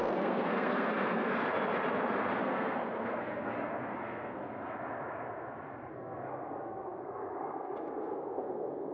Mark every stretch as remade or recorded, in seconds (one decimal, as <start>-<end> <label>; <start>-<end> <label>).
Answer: 0.0-1.4 remade; 1.4-2.4 recorded; 2.4-4.4 remade; 4.4-5.9 recorded; 5.9-8.9 remade